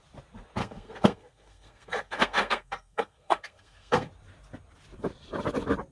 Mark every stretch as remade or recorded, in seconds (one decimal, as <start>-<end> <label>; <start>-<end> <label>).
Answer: 0.0-0.6 recorded; 0.6-4.1 remade; 4.1-5.9 recorded